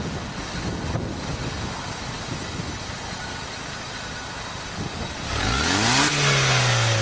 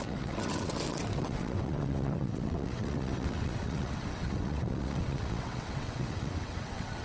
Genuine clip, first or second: first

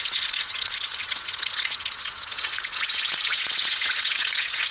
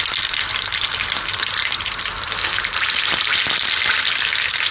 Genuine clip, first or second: second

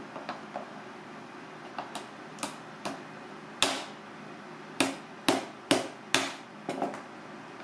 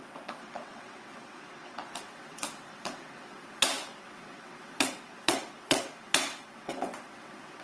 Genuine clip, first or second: first